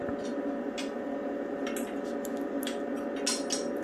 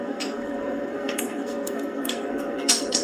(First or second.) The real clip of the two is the first